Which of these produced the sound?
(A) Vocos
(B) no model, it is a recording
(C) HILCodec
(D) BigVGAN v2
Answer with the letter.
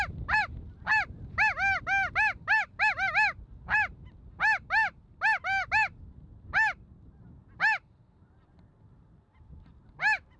B